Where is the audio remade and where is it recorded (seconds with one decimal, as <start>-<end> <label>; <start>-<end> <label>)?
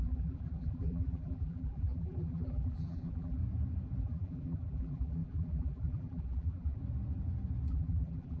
0.0-3.4 remade; 3.4-4.0 recorded; 4.0-6.8 remade; 6.8-7.7 recorded; 7.7-8.4 remade